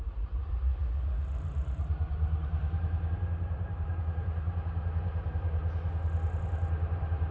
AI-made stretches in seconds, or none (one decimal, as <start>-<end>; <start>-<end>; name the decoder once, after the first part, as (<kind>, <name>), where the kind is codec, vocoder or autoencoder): 0.0-5.6 (vocoder, BigVGAN v2); 6.4-7.3